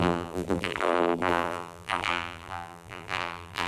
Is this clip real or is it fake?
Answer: fake